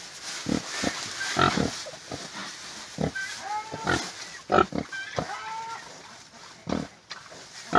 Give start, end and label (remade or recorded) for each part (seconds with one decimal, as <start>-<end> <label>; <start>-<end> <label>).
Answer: 0.0-7.8 recorded